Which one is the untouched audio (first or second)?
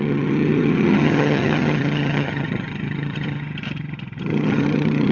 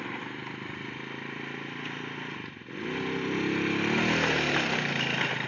second